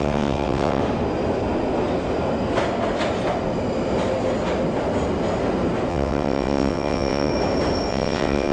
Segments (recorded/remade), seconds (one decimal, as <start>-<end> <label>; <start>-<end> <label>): 0.0-0.8 remade; 0.8-5.9 recorded; 5.9-7.3 remade; 7.3-7.9 recorded; 7.9-8.5 remade